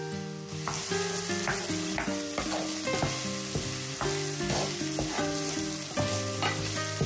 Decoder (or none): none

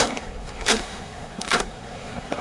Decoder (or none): codec, SNAC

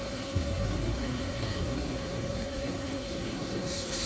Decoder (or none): codec, SNAC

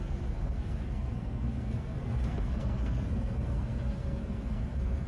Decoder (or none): codec, SNAC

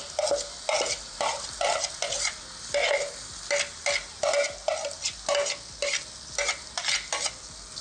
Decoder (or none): none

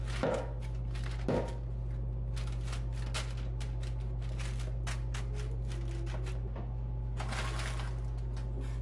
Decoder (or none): none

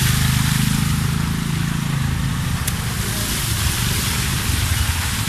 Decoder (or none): none